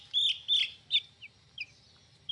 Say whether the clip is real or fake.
real